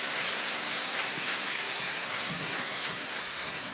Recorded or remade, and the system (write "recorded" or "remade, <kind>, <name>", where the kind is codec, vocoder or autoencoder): remade, codec, SNAC